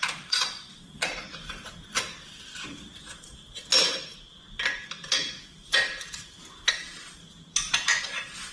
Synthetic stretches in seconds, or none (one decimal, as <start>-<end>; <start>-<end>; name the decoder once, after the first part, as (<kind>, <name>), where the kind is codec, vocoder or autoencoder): 0.0-1.1 (vocoder, Vocos); 3.0-3.4; 6.7-7.2; 8.0-8.5